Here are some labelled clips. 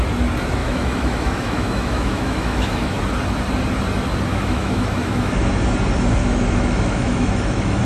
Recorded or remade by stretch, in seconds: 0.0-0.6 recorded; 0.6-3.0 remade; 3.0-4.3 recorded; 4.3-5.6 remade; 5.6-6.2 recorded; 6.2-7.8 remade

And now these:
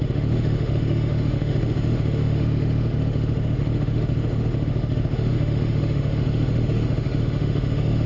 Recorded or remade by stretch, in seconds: 0.0-8.1 remade